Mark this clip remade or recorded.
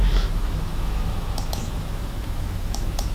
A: remade